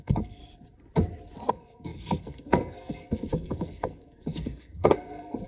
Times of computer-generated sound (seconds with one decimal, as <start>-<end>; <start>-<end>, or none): 0.0-0.4; 1.5-5.5